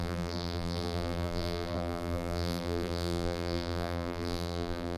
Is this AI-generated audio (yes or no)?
yes